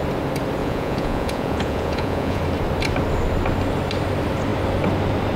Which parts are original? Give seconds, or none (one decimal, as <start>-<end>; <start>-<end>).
0.0-0.6; 2.4-5.4